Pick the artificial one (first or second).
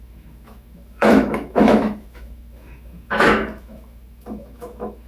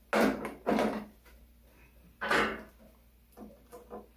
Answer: first